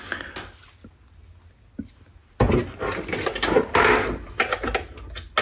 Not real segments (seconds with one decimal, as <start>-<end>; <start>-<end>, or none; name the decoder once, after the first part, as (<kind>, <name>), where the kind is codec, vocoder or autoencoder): none